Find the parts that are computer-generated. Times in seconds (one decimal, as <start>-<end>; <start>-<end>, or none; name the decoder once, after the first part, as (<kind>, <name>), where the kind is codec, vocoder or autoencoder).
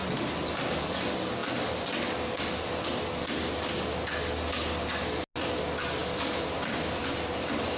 6.0-7.8 (vocoder, BigVGAN v2)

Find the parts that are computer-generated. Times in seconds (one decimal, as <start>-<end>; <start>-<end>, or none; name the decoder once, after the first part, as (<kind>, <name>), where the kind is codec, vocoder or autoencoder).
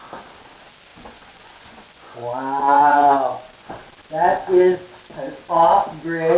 0.9-3.8 (vocoder, Vocos)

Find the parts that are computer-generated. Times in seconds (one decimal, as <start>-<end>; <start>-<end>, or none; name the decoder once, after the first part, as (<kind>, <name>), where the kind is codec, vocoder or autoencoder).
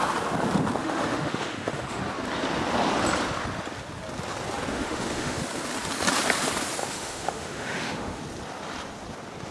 0.8-2.0 (autoencoder, DAC-VAE); 4.7-5.4; 6.8-8.2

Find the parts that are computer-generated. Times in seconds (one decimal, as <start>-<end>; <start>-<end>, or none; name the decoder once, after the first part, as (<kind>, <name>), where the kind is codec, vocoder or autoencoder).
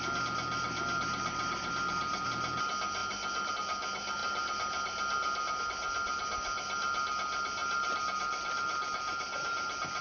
none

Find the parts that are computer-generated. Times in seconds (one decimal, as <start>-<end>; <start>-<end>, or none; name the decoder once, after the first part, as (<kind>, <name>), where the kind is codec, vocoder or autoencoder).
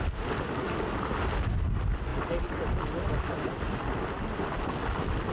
none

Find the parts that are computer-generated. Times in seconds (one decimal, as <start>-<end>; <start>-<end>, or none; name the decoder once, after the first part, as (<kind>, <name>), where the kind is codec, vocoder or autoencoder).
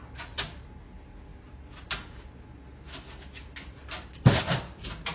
none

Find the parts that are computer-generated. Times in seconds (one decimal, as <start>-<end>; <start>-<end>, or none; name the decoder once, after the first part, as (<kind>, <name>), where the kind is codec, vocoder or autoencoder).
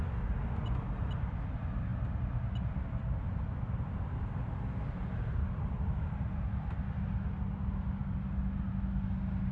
none